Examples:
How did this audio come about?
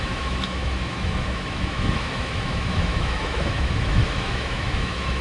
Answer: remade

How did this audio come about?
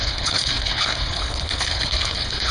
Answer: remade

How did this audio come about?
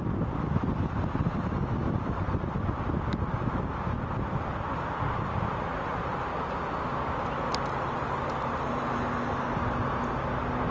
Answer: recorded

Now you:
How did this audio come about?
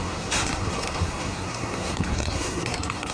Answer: remade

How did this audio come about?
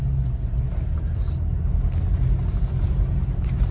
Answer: recorded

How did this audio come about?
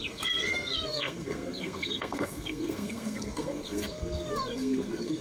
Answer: remade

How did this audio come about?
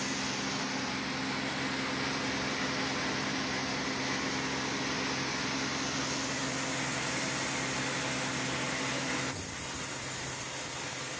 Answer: recorded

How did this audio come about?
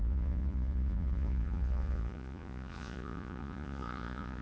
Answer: remade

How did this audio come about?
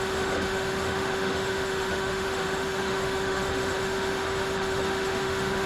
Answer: remade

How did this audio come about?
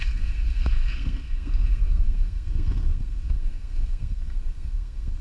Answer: remade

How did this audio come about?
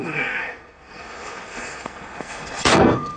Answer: remade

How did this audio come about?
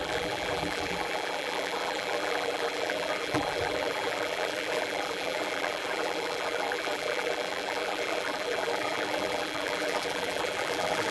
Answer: remade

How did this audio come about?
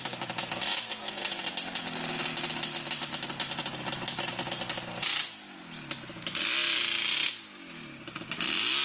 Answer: recorded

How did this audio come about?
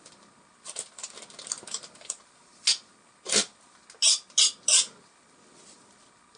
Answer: recorded